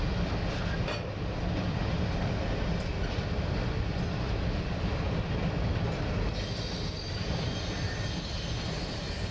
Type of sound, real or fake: real